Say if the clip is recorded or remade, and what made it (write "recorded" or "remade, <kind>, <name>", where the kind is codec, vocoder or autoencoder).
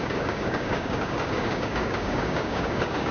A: remade, codec, DAC